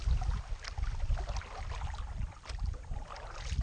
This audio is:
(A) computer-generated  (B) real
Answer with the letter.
B